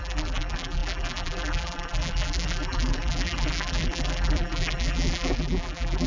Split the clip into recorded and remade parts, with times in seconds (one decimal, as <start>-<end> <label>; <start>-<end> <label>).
0.0-6.1 remade